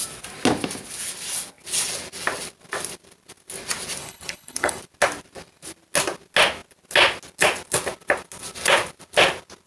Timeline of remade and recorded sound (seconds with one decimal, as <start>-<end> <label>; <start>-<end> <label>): 0.0-4.0 recorded; 4.0-4.8 remade; 4.8-9.7 recorded